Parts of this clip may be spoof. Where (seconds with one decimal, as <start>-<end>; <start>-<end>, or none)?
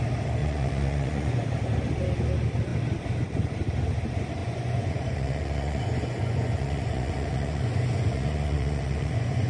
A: 0.4-1.4; 4.4-9.5